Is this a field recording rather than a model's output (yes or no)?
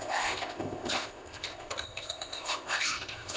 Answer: no